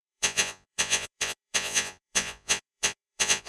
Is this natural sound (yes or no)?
no